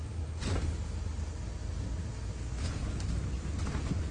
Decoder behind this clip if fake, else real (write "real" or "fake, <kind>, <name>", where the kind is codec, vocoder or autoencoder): real